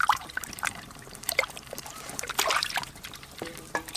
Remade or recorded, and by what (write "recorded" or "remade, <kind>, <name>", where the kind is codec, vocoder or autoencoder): remade, vocoder, BigVGAN v2